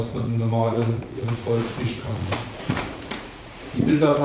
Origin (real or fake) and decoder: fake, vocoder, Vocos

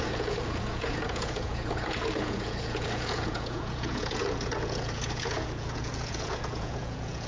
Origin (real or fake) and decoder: fake, vocoder, Vocos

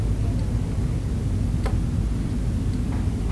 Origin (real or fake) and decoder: real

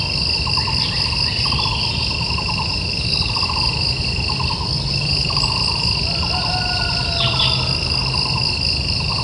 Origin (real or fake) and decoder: real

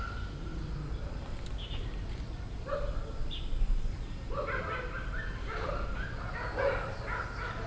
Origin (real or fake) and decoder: real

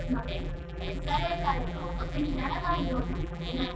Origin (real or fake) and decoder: fake, vocoder, BigVGAN v2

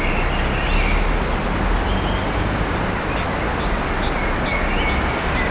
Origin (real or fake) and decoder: real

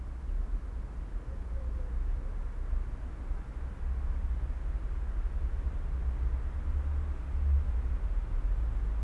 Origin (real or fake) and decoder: real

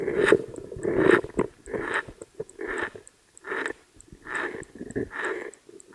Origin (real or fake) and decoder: real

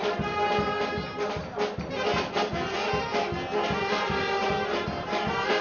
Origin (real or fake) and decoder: real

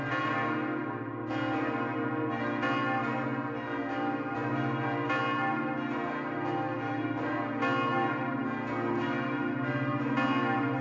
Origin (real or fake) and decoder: real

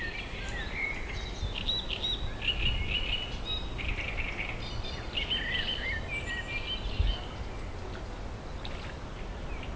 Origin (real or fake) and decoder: real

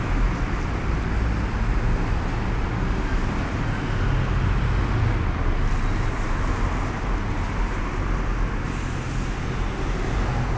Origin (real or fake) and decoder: real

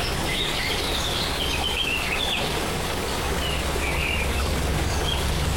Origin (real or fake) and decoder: fake, codec, DAC